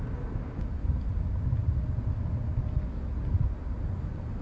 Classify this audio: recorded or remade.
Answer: recorded